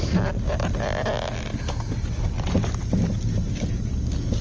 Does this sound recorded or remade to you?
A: recorded